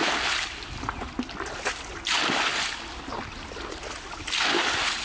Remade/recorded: recorded